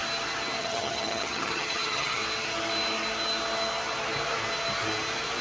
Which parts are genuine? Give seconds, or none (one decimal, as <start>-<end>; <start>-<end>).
0.0-0.6; 2.2-5.4